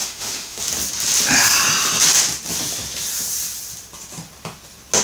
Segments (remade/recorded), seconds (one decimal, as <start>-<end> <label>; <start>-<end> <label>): 0.0-0.6 remade; 0.6-5.0 recorded